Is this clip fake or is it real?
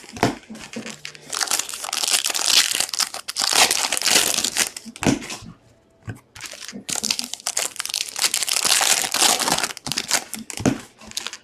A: real